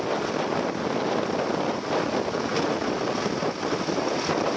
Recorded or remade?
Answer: recorded